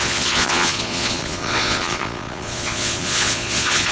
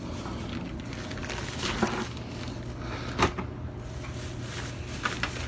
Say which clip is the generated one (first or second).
first